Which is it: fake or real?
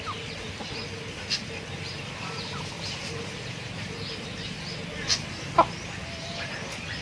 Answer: real